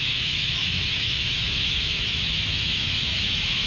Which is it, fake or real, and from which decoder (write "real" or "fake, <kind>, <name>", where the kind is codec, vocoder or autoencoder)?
fake, autoencoder, DAC-VAE